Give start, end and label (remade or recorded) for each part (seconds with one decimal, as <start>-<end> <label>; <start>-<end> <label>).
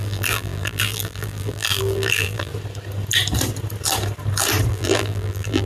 0.0-2.5 remade; 2.5-4.7 recorded; 4.7-5.7 remade